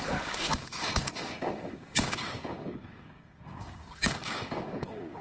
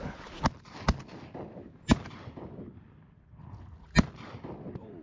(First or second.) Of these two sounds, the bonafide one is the second